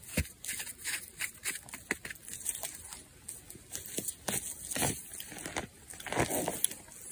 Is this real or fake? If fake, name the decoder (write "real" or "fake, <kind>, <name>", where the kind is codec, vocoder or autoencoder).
real